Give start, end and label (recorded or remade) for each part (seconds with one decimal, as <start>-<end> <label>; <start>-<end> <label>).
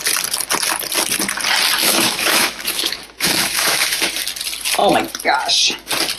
0.0-1.8 recorded; 1.8-4.1 remade; 4.1-6.2 recorded